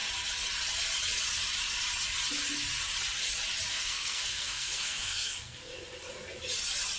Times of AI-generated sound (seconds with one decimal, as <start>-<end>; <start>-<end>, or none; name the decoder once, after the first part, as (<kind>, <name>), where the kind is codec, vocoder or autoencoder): 3.7-5.7 (codec, SNAC)